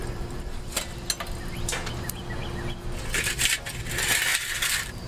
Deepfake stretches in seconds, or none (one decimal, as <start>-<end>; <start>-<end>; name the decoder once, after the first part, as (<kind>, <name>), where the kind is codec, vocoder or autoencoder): 0.0-0.9 (vocoder, BigVGAN v2); 4.3-5.1